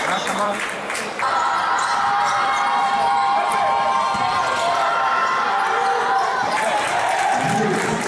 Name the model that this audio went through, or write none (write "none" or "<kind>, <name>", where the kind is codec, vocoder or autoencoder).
vocoder, BigVGAN v2